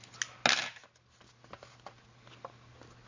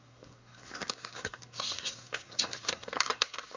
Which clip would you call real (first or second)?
first